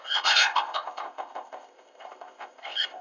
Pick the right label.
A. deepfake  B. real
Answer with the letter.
A